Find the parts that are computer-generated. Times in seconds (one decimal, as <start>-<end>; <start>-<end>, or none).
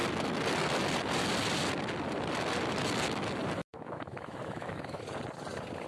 3.6-5.0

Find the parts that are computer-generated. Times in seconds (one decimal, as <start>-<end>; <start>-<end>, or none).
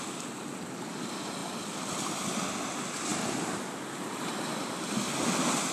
none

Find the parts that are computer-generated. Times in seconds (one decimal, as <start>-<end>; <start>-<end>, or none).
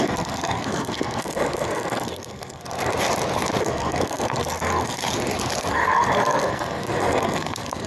0.0-2.9; 3.6-5.0; 5.7-7.9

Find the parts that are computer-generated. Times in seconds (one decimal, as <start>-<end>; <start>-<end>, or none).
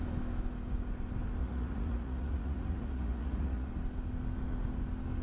1.4-3.7